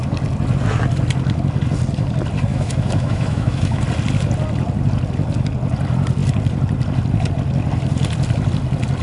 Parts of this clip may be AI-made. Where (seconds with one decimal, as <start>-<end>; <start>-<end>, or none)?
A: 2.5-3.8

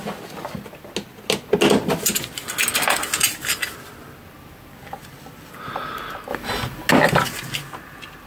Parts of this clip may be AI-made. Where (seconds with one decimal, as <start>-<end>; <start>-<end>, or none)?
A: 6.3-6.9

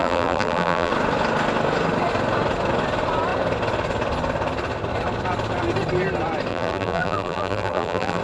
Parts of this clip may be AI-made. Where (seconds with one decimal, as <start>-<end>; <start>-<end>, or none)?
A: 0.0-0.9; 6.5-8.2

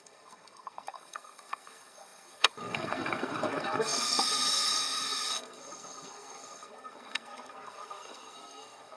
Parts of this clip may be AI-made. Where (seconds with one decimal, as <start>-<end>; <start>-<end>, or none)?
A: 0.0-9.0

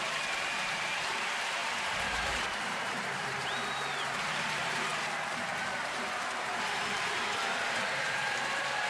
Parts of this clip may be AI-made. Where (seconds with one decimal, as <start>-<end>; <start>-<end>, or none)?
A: 0.0-4.9; 5.8-8.9